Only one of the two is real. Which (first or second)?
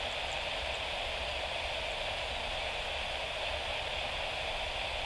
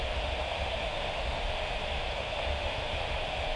first